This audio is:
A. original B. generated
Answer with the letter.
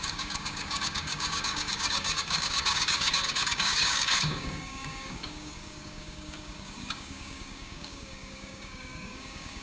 B